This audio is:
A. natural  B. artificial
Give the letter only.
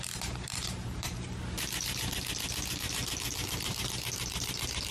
B